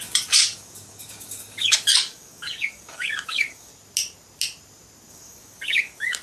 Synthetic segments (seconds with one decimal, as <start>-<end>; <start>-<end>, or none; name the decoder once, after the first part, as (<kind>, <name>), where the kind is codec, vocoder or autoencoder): 0.0-3.7 (codec, DAC); 5.1-6.2